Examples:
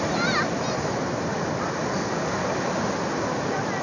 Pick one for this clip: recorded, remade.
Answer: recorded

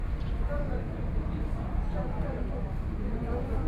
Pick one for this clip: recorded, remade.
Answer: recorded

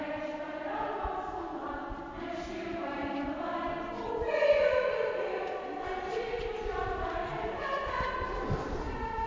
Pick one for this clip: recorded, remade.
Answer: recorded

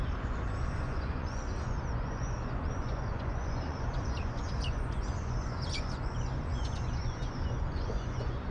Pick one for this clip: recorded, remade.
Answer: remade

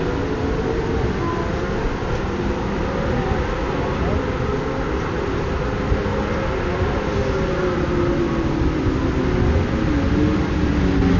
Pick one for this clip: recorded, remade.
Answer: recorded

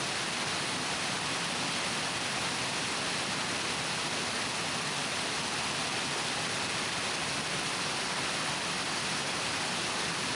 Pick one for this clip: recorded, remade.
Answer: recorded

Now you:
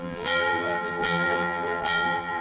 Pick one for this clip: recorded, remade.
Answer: remade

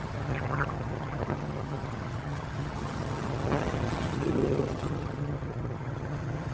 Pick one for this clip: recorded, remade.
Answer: remade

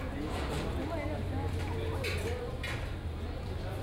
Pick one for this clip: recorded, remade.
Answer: recorded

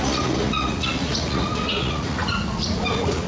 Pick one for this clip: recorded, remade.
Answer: remade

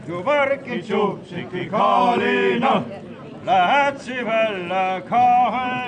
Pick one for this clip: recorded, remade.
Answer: recorded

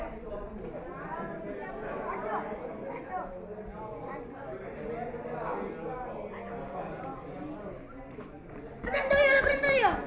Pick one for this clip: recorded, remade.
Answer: recorded